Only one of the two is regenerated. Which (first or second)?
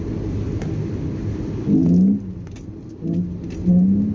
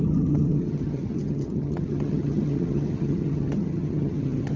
second